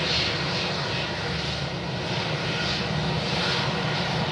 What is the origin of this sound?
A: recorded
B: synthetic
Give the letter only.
A